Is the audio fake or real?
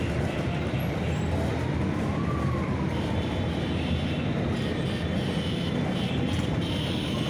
real